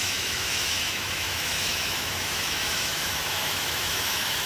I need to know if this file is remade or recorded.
remade